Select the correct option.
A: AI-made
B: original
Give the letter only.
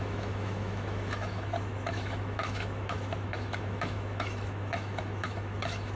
A